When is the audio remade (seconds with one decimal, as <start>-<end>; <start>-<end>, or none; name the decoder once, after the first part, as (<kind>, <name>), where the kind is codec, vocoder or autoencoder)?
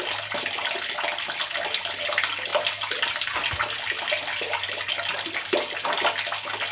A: none